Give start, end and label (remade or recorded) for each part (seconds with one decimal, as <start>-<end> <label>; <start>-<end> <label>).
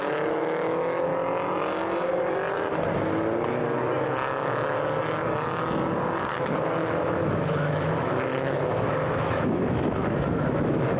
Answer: 0.0-1.1 remade; 1.1-6.2 recorded; 6.2-11.0 remade